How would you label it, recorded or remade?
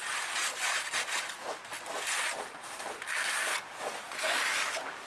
recorded